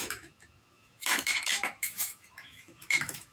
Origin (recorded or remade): remade